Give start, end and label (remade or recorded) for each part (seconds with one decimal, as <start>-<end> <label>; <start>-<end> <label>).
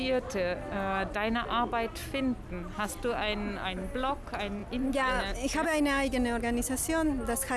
0.0-7.6 recorded